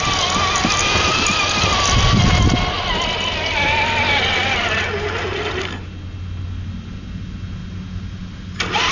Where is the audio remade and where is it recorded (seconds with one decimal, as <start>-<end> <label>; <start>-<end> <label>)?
0.0-8.9 recorded